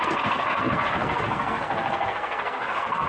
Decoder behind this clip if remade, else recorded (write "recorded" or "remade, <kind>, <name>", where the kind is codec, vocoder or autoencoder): remade, codec, SNAC